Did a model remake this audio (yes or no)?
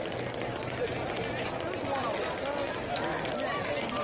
no